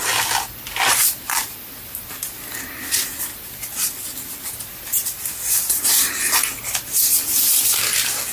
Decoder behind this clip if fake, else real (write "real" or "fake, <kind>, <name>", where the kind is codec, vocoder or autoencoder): real